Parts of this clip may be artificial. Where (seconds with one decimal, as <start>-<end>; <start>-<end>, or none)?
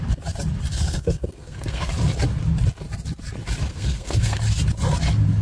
0.7-1.9; 3.7-4.4